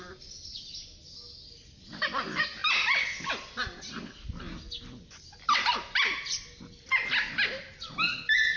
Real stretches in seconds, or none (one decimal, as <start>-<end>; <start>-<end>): 0.0-8.6